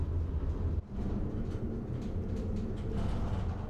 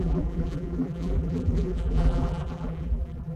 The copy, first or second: second